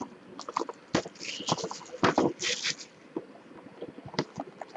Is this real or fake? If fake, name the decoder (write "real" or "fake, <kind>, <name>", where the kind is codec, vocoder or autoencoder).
real